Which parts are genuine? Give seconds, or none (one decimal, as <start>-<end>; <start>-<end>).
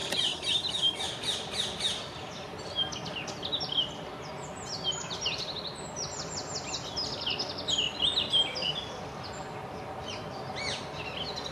4.3-5.7; 6.3-11.5